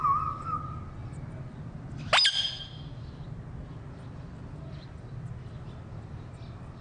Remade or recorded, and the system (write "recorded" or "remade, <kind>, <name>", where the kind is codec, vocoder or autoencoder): recorded